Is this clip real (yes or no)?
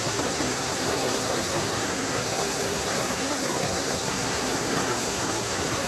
no